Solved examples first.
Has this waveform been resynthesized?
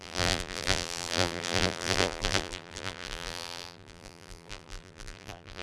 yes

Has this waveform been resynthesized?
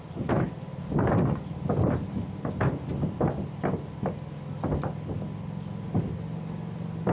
no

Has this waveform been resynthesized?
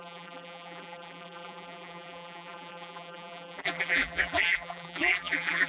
yes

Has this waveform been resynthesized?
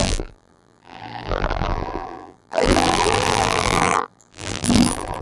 yes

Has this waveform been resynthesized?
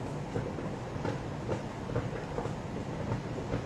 yes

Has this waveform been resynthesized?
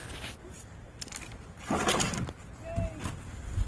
no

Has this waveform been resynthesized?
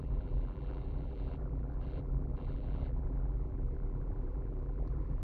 yes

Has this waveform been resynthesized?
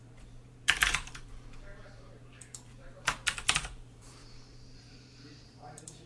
yes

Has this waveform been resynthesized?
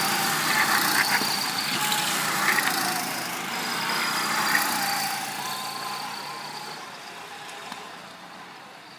no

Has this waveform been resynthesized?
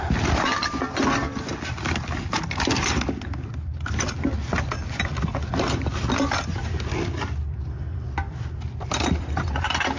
no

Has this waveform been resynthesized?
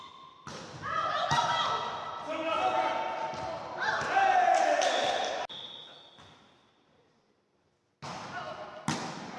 no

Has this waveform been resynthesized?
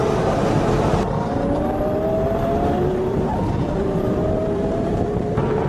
yes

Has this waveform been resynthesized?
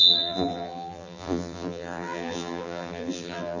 yes